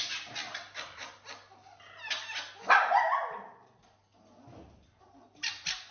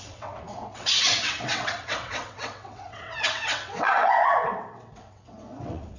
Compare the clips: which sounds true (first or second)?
first